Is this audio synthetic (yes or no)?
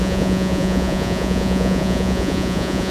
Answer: yes